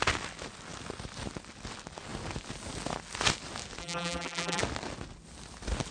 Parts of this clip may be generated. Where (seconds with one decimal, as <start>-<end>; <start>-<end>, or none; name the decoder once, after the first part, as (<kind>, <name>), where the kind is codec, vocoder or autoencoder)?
3.8-4.6 (vocoder, BigVGAN v2)